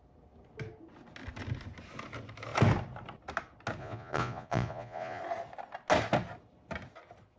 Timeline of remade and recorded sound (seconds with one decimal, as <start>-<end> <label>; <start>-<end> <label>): 0.0-3.8 recorded; 3.8-5.2 remade; 5.2-7.4 recorded